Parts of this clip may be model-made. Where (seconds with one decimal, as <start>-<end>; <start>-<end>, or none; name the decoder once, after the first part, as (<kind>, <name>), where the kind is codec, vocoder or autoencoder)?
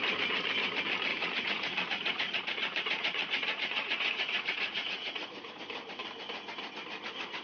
1.1-5.5 (vocoder, Vocos)